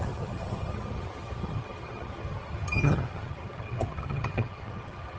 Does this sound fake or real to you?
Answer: fake